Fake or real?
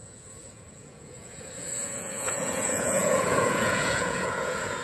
fake